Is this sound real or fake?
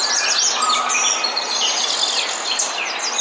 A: real